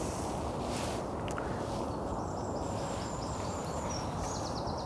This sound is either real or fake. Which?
real